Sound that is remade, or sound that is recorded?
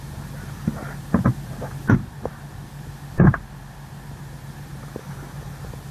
recorded